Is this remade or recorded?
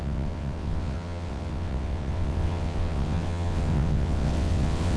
remade